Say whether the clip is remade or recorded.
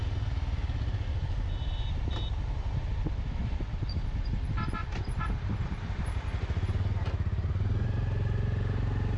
recorded